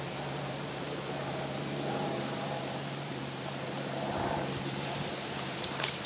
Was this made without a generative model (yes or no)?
no